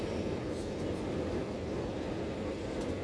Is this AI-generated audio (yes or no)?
no